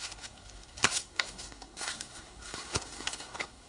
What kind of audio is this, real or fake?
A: fake